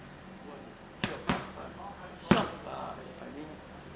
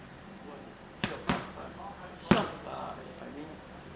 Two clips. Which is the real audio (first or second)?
first